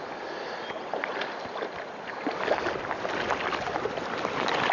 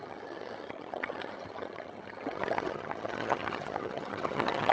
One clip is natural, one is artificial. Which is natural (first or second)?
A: first